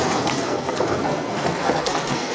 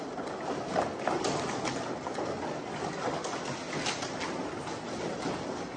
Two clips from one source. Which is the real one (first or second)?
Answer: second